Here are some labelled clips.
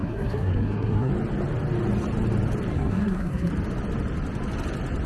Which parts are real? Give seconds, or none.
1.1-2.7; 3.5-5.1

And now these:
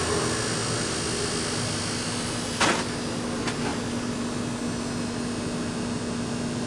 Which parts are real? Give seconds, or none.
0.0-6.7

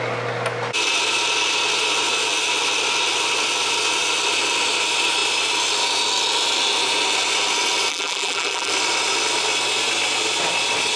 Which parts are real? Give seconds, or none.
0.0-7.9; 8.7-11.0

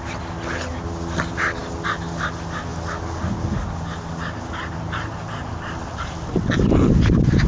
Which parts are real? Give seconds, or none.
0.0-7.5

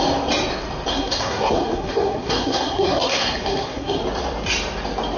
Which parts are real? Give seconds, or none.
0.0-0.9; 4.0-5.2